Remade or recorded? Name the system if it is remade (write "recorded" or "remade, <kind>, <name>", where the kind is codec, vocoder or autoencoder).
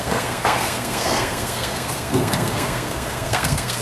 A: remade, codec, SNAC